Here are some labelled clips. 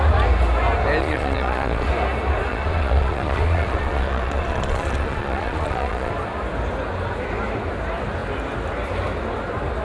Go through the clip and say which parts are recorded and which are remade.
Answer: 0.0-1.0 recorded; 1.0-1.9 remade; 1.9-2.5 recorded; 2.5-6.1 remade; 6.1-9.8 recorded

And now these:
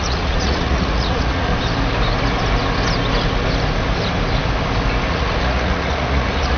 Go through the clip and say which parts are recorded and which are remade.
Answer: 0.0-1.5 remade; 1.5-5.1 recorded; 5.1-6.6 remade